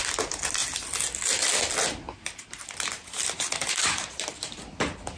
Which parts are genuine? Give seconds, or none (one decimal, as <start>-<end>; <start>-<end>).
0.0-5.2